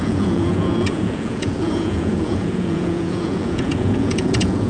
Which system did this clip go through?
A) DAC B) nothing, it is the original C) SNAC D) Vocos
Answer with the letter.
D